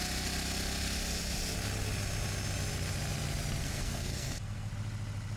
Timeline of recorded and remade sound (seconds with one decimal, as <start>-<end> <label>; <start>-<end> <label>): 0.0-3.6 recorded; 3.6-4.7 remade; 4.7-5.4 recorded